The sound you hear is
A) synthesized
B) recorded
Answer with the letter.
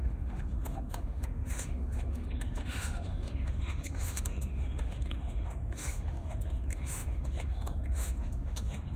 A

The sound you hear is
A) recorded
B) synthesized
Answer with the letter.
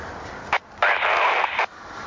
A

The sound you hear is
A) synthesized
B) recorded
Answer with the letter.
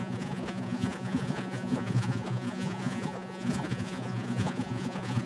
A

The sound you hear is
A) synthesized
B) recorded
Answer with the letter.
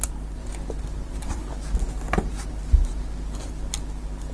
B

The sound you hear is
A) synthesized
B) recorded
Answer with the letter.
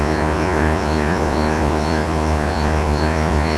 A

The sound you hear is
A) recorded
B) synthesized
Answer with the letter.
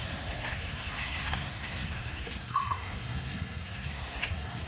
B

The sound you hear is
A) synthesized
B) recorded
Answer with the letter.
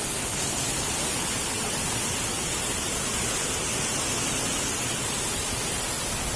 B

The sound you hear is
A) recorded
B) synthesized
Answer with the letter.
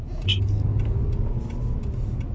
A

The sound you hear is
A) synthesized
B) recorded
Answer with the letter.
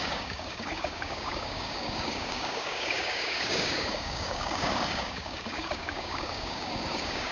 A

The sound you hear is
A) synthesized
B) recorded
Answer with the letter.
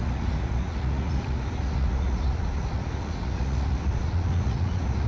A